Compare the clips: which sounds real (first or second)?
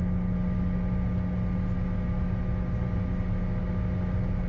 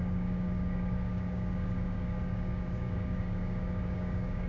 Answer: first